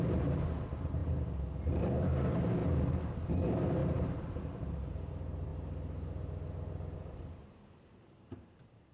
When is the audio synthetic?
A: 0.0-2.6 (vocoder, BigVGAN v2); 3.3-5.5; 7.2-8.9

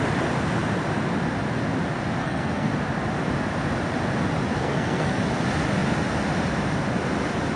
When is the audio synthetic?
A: 2.2-2.7 (codec, SNAC); 4.6-5.2

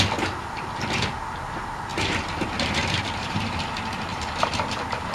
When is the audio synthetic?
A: 1.9-3.6 (vocoder, BigVGAN v2); 4.1-5.1

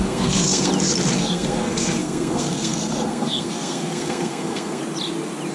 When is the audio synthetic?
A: 0.0-0.7 (codec, SNAC); 1.2-4.8

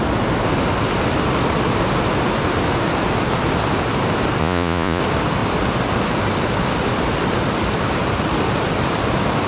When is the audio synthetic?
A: 4.4-5.0 (vocoder, Vocos)

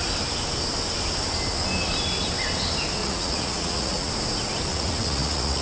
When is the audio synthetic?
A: 3.0-4.1 (vocoder, Vocos); 4.7-5.6

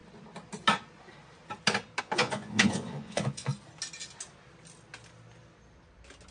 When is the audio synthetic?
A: 2.0-3.5 (vocoder, Vocos)

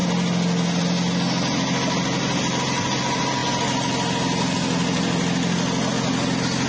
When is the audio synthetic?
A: none